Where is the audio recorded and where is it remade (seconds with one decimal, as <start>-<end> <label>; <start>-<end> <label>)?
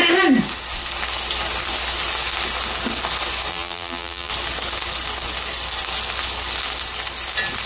0.0-3.5 recorded; 3.5-4.3 remade; 4.3-7.7 recorded